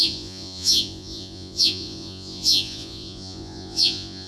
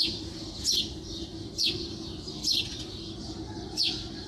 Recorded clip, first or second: second